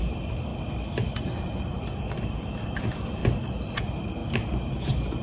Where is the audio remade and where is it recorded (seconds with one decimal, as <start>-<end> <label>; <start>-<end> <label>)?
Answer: 0.0-0.5 remade; 0.5-1.2 recorded; 1.2-3.2 remade; 3.2-3.8 recorded; 3.8-5.2 remade